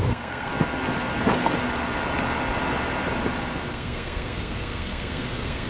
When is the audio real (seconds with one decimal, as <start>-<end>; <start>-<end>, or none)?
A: 0.5-3.7